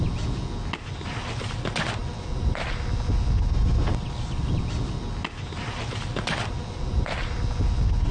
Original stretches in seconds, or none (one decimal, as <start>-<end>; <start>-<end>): 0.0-8.1